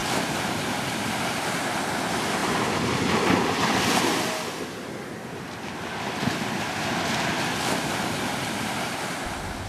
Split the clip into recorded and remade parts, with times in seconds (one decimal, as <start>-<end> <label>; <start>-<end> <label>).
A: 0.0-1.1 remade; 1.1-9.7 recorded